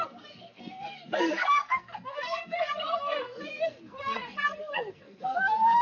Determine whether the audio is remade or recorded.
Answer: remade